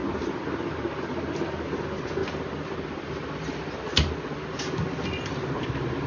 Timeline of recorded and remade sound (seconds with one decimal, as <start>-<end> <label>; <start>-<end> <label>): 0.0-6.1 recorded